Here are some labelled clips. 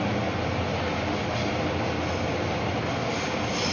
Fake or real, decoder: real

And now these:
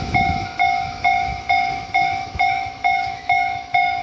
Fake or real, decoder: fake, autoencoder, DAC-VAE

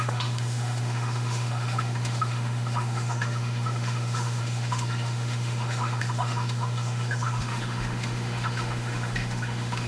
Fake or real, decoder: fake, autoencoder, DAC-VAE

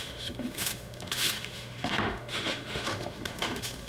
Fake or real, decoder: fake, autoencoder, DAC-VAE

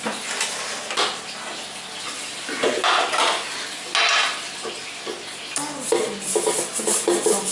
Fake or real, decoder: real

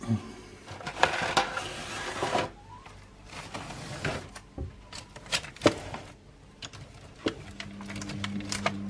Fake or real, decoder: real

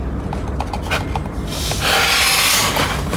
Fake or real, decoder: real